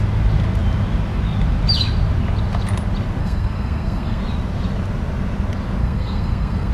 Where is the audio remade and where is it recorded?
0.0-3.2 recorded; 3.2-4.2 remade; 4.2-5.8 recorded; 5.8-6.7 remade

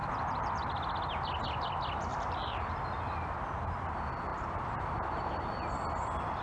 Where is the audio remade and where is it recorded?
0.0-0.5 remade; 0.5-2.1 recorded; 2.1-2.6 remade; 2.6-4.3 recorded; 4.3-5.4 remade; 5.4-6.4 recorded

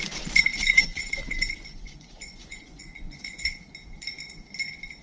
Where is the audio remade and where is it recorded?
0.0-0.5 recorded; 0.5-3.5 remade; 3.5-5.0 recorded

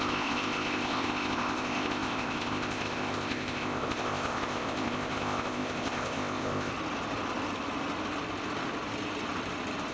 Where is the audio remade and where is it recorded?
0.0-6.7 remade; 6.7-9.9 recorded

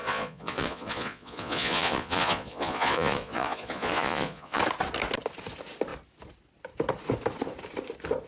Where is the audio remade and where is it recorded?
0.0-4.6 remade; 4.6-8.3 recorded

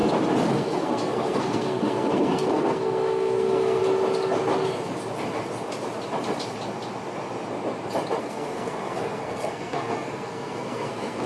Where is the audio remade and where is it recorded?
0.0-0.5 recorded; 0.5-3.8 remade; 3.8-8.2 recorded; 8.2-11.3 remade

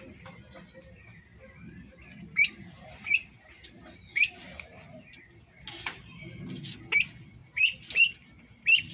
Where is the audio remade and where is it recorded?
0.0-8.9 recorded